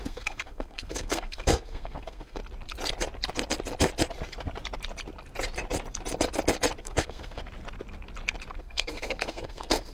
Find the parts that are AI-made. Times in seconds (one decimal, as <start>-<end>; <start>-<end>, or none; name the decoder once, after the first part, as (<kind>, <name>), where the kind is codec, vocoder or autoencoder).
0.0-2.4 (codec, SNAC); 6.8-7.4; 8.6-9.9